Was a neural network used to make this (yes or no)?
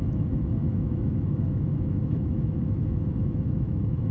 yes